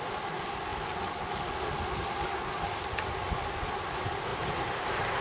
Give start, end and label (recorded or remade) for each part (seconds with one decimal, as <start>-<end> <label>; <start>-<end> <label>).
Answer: 0.0-4.3 recorded; 4.3-5.2 remade